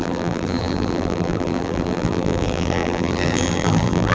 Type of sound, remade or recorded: remade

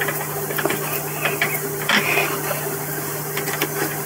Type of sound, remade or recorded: recorded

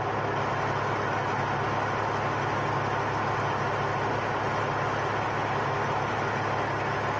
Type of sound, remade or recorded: recorded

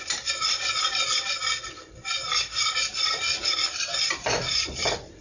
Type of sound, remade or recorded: remade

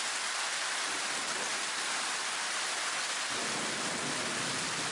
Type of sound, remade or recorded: remade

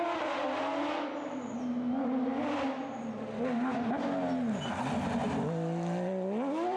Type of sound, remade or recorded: recorded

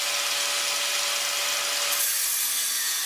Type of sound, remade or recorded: recorded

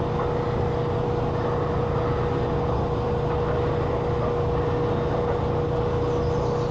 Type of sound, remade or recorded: recorded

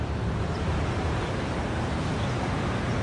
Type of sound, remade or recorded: remade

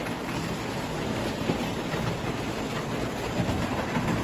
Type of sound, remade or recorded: remade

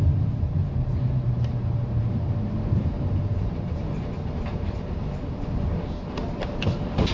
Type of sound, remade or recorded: remade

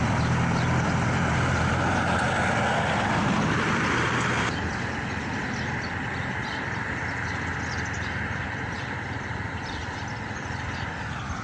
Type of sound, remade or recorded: remade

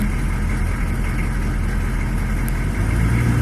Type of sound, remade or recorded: recorded